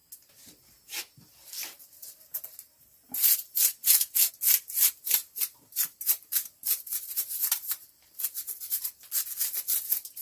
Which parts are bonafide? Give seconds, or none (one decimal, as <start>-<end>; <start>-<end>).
0.0-5.2; 9.0-10.2